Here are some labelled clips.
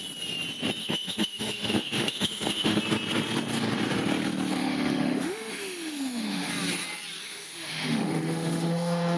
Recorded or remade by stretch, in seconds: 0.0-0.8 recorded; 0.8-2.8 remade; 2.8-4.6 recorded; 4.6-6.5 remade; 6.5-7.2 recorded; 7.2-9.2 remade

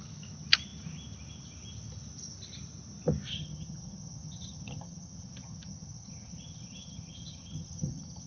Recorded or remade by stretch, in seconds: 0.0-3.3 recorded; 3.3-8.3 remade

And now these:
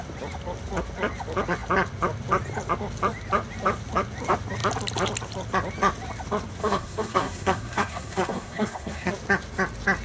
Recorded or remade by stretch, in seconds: 0.0-6.6 recorded; 6.6-9.1 remade; 9.1-10.0 recorded

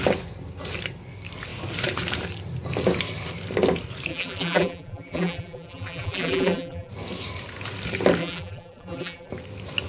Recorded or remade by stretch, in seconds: 0.0-4.1 recorded; 4.1-6.9 remade; 6.9-8.2 recorded; 8.2-9.3 remade; 9.3-9.9 recorded